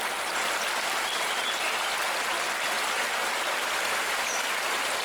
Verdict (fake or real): real